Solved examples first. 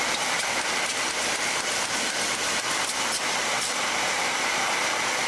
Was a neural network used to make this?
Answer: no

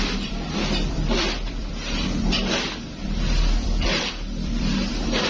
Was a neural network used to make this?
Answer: yes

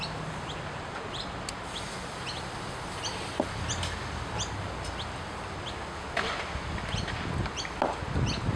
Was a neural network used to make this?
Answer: no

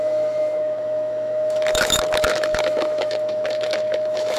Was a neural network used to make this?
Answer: yes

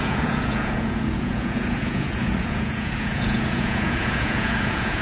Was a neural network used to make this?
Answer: yes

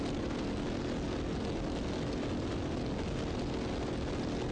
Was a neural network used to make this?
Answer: no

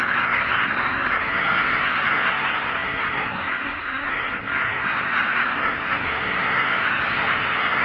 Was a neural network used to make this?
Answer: yes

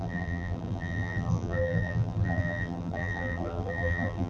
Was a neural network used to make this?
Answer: yes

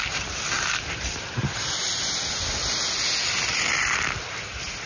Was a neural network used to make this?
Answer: no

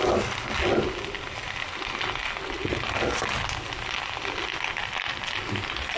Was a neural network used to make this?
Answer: no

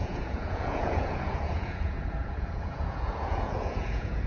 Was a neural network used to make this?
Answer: yes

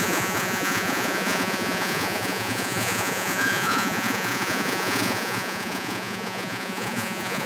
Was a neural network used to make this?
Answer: yes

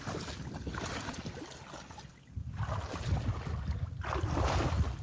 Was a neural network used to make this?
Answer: no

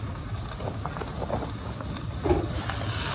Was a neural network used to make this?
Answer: no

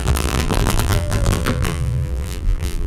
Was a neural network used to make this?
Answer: yes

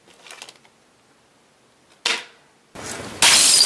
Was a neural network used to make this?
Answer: no